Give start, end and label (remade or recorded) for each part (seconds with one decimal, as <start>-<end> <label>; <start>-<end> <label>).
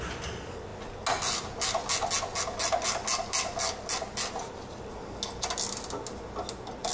0.0-6.9 recorded